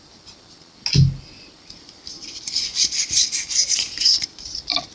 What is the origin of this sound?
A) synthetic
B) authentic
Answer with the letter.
B